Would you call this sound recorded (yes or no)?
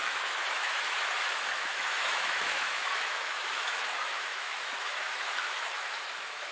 no